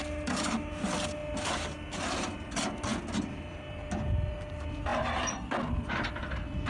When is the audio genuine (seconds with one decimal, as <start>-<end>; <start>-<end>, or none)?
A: 0.0-1.2; 2.0-2.9; 3.7-4.9; 5.6-6.7